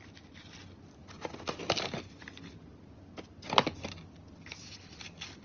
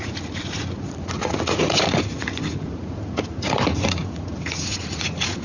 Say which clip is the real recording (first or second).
first